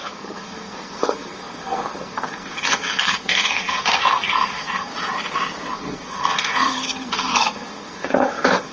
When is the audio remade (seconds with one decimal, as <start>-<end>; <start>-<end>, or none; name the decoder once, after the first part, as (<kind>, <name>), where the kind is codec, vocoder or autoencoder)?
0.0-4.9 (codec, SNAC); 5.7-8.7